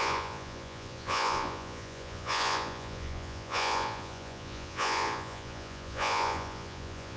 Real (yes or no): no